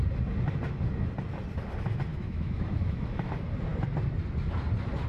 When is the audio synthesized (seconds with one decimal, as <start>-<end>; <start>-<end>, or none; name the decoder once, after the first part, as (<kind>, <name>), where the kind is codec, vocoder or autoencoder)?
2.1-3.3 (autoencoder, DAC-VAE)